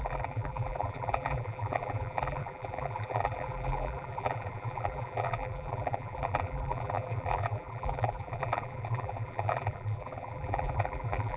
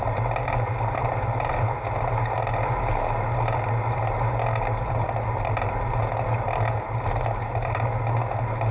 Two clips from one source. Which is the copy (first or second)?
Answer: first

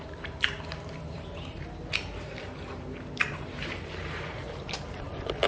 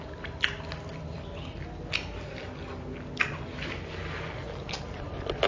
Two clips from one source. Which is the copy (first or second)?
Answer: first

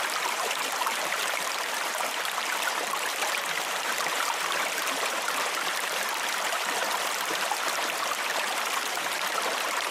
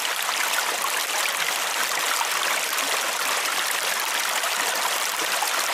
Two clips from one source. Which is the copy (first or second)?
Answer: first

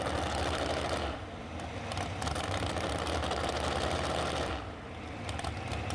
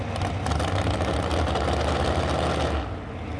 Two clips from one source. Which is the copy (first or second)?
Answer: first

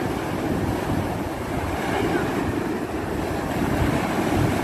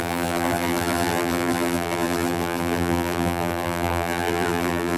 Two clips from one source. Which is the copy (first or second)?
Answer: second